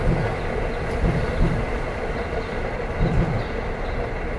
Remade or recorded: recorded